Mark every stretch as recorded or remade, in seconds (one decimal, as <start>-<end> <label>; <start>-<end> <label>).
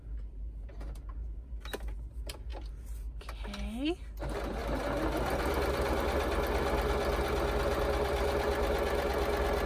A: 0.0-9.7 recorded